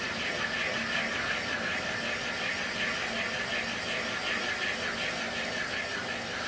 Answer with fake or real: real